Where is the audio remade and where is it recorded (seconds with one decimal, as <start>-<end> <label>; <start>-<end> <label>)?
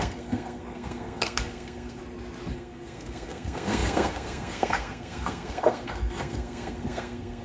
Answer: 0.0-2.0 remade; 2.0-2.5 recorded; 2.5-7.4 remade